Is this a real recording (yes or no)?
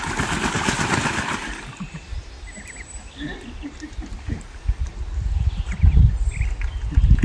yes